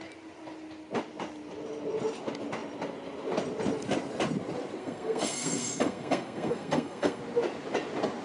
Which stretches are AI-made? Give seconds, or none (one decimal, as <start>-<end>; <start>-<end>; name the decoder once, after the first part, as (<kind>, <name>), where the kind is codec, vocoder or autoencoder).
4.8-7.2 (codec, SNAC)